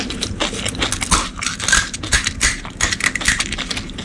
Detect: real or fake real